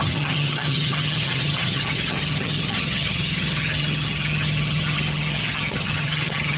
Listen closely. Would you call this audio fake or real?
fake